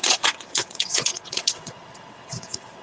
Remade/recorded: remade